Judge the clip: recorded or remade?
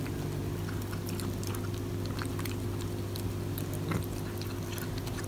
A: recorded